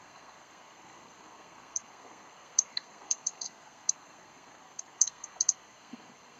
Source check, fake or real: fake